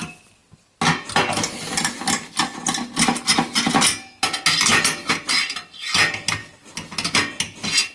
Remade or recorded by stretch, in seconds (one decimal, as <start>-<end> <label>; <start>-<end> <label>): 0.0-7.9 recorded